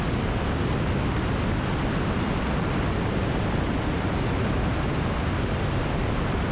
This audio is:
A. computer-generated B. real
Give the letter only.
B